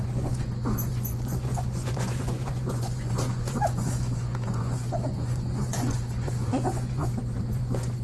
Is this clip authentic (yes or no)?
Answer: no